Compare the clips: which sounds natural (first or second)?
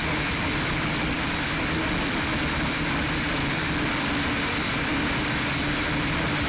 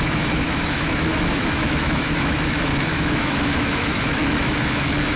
first